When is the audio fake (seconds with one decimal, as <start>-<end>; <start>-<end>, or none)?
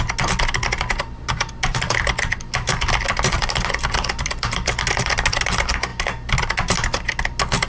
none